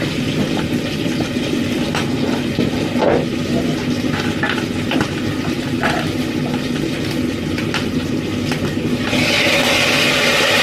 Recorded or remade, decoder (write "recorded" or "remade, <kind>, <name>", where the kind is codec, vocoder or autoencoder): recorded